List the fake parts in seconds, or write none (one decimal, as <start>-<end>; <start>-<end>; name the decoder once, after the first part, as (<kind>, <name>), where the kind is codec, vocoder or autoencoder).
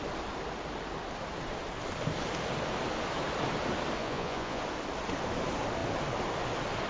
4.0-4.6 (vocoder, Vocos)